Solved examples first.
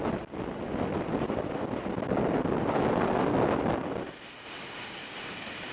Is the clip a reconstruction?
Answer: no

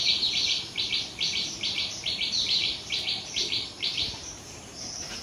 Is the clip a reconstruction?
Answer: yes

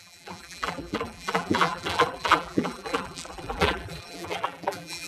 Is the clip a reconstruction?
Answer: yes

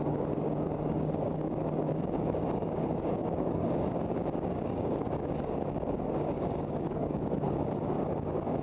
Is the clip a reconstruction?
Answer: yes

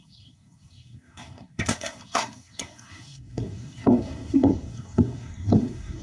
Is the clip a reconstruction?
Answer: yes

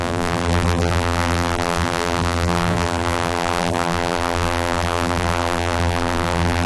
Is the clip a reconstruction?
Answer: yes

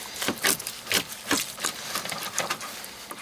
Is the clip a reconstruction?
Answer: no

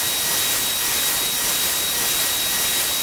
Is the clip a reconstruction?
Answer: no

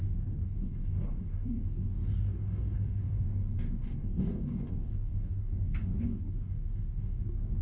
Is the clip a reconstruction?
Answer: yes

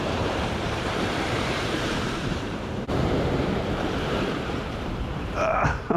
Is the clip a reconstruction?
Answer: yes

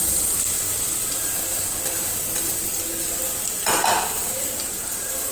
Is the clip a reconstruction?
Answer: no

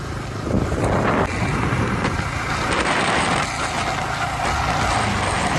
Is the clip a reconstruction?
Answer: no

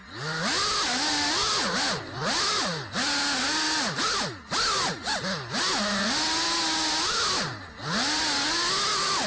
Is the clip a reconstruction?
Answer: no